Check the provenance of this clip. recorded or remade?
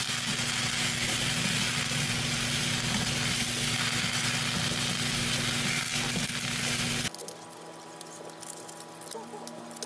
recorded